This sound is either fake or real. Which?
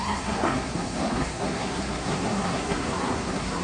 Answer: fake